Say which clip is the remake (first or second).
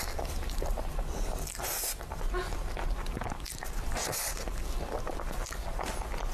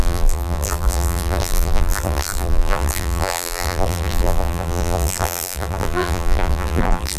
second